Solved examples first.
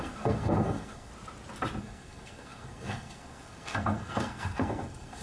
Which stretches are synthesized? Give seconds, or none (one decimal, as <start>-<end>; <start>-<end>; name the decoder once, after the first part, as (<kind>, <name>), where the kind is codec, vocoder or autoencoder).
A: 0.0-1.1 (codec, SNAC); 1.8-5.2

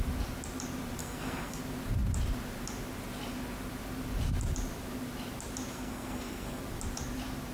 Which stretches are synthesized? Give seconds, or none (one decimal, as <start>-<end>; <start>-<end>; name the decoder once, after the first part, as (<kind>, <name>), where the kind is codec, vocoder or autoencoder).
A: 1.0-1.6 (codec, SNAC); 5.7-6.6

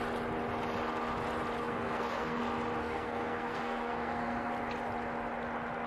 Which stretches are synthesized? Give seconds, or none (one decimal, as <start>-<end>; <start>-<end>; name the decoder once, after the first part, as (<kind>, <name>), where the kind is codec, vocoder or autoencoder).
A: 1.6-2.4 (codec, SNAC); 2.8-4.5

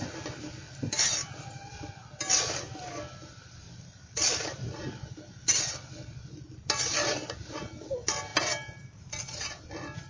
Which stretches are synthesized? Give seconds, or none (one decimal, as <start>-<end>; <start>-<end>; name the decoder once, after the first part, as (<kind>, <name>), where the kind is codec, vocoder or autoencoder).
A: none

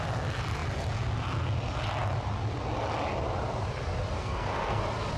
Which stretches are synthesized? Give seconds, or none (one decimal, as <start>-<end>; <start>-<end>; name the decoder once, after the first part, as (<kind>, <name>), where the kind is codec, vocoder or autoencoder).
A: 4.2-4.8 (codec, SNAC)

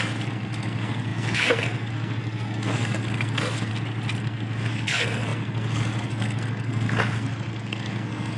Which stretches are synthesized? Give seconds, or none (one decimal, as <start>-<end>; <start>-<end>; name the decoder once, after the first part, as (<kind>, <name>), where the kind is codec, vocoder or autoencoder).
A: 0.0-3.7 (codec, SNAC); 4.2-8.4

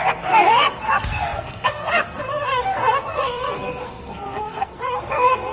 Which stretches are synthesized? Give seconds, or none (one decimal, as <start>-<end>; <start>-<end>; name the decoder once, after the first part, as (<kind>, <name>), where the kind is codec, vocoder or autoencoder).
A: 0.0-5.5 (codec, SNAC)